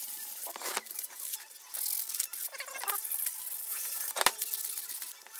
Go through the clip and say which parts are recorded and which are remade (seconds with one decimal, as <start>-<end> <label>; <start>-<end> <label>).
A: 0.0-1.5 remade; 1.5-3.7 recorded; 3.7-4.2 remade; 4.2-5.4 recorded